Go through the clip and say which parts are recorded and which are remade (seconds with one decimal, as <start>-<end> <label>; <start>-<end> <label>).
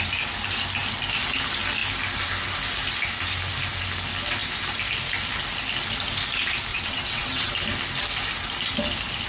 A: 0.0-6.7 recorded; 6.7-7.5 remade; 7.5-9.3 recorded